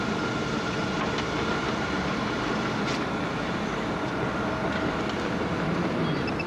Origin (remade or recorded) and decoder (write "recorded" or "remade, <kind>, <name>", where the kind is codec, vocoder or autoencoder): recorded